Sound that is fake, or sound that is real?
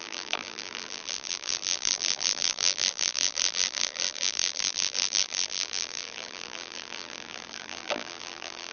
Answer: fake